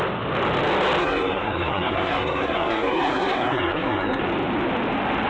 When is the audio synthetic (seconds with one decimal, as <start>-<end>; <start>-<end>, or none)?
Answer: 1.0-4.2